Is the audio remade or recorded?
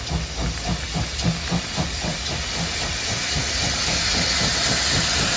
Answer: recorded